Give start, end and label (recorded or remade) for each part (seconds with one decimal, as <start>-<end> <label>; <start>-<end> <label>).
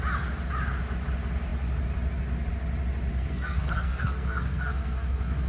0.0-3.1 recorded; 3.1-5.5 remade